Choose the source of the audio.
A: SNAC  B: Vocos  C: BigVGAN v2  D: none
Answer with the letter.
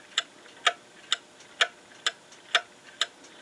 D